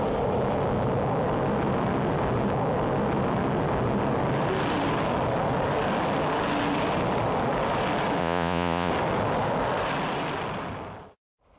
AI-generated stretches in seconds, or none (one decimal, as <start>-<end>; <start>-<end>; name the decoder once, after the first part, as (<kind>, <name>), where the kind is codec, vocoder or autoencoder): 8.2-8.9 (vocoder, Vocos)